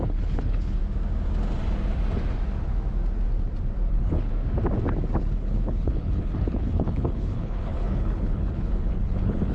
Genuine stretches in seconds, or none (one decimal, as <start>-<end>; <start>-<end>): 0.8-3.9; 4.3-5.2